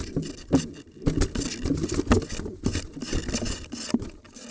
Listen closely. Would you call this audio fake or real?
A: real